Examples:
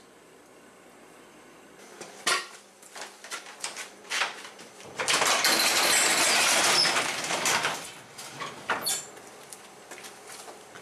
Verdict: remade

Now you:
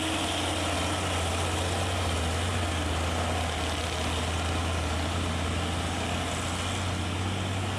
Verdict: recorded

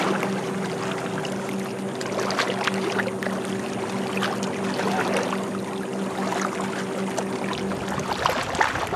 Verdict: recorded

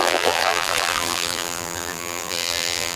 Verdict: remade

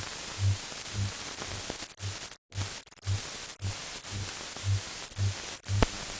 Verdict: recorded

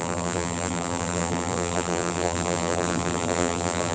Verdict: remade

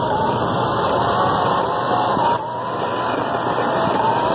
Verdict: recorded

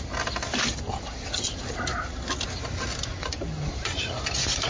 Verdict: recorded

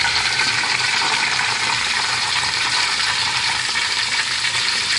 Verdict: remade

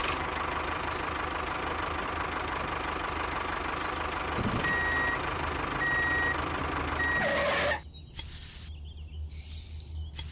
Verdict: recorded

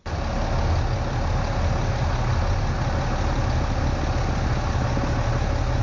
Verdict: recorded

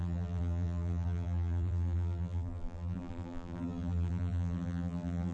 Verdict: remade